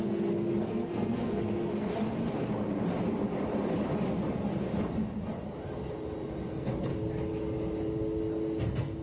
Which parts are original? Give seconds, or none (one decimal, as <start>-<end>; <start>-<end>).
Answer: 1.9-6.5; 6.9-8.6